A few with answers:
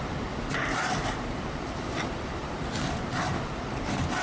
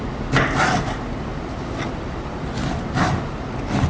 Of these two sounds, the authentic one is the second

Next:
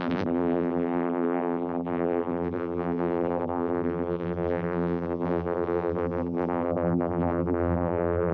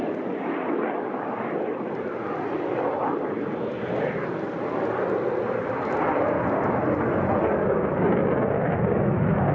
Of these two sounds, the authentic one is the second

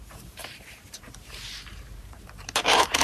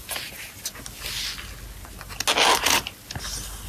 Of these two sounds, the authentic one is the second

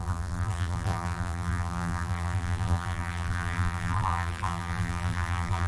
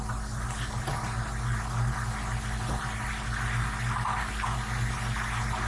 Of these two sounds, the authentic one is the second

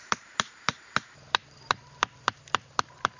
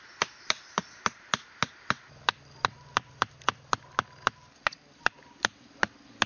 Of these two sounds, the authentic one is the second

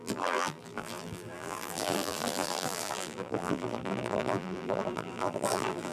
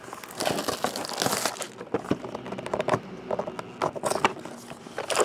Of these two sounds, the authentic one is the second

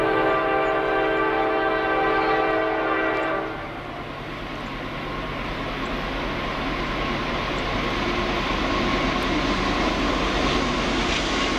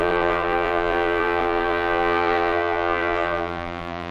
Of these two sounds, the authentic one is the first